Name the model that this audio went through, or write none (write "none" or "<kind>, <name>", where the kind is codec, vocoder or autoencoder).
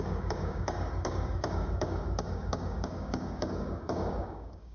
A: codec, DAC